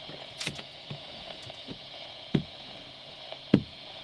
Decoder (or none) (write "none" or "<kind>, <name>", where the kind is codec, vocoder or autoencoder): vocoder, Vocos